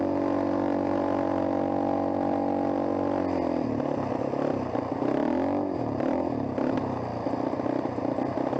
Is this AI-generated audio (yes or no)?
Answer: no